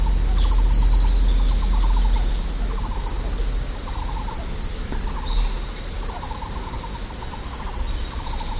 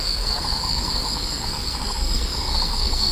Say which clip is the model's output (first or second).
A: second